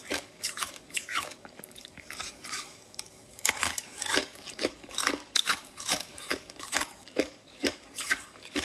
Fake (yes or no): yes